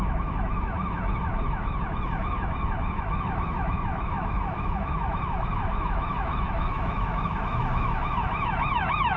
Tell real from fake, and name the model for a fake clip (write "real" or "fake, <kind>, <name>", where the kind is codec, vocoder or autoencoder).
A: fake, autoencoder, DAC-VAE